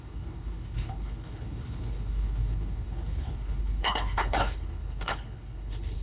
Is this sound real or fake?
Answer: fake